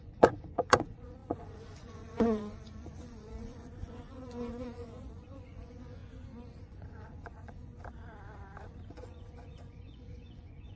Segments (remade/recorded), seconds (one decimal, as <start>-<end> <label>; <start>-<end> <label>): 0.0-6.0 remade; 6.0-6.6 recorded; 6.6-7.7 remade; 7.7-8.9 recorded; 8.9-10.8 remade